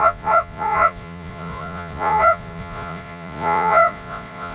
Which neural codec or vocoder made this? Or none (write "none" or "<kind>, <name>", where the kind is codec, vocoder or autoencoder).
vocoder, Vocos